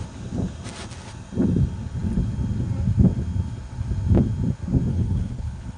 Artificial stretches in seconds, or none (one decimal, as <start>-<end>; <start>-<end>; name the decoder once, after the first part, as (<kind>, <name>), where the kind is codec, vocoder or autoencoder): 4.9-5.8 (codec, HILCodec)